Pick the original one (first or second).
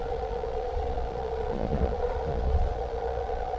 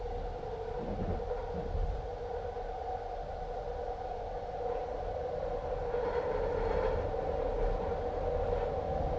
second